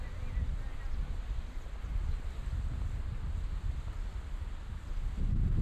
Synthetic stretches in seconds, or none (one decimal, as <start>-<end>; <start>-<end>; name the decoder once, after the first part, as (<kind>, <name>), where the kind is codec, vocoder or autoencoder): none